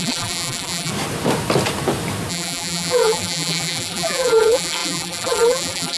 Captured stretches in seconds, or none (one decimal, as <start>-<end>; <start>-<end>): 0.9-2.3